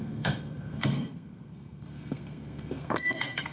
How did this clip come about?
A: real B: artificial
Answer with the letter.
B